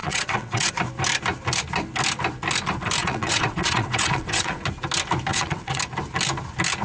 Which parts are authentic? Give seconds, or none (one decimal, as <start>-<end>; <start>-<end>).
0.7-3.0; 4.7-5.3; 5.8-6.8